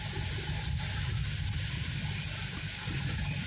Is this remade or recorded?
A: recorded